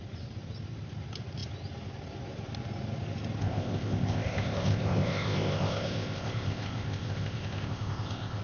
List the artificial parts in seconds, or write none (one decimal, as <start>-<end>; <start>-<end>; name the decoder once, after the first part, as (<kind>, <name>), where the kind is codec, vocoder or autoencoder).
3.4-8.4 (codec, ZipCodec)